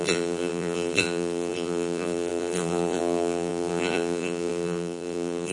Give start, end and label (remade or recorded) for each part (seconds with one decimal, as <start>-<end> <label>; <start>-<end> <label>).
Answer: 0.0-5.5 remade